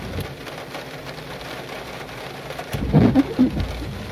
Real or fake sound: real